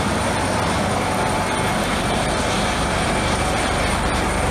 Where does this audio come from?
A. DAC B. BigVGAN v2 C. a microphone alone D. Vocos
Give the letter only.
B